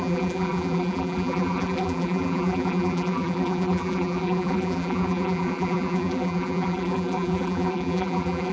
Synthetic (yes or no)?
yes